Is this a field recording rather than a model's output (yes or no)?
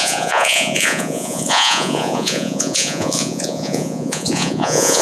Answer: no